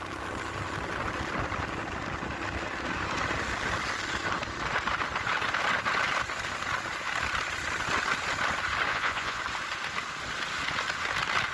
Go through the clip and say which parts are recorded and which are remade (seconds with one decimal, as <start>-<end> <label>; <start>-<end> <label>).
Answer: 0.0-8.9 recorded; 8.9-9.4 remade; 9.4-11.5 recorded